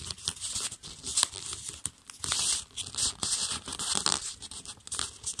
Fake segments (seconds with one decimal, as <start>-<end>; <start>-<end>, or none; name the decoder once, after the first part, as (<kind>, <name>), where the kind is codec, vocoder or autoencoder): none